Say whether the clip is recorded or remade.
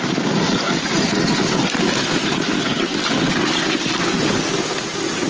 recorded